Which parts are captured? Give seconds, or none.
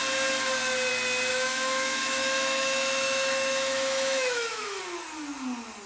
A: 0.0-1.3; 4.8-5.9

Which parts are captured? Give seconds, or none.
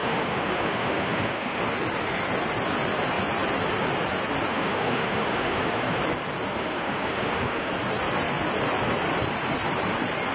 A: 1.6-4.5; 6.0-6.5; 7.7-10.3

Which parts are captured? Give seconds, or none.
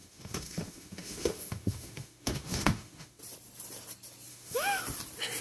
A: 3.2-4.3; 4.8-5.4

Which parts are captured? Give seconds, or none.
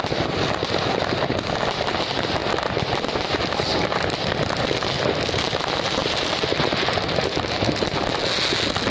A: 0.0-8.9